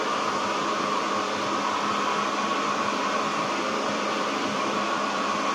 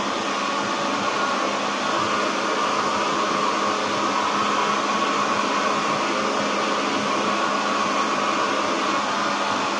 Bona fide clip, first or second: second